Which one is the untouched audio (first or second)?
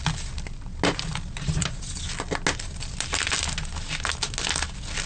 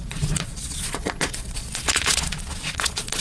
first